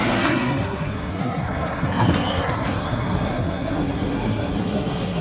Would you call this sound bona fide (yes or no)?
no